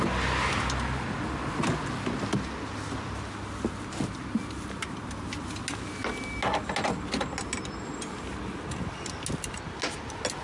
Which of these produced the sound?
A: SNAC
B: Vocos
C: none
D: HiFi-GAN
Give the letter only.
C